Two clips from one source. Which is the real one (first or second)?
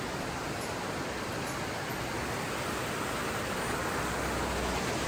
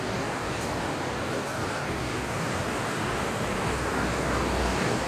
first